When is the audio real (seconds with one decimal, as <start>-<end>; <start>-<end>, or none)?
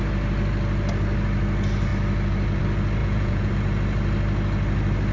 0.0-3.0; 3.5-5.1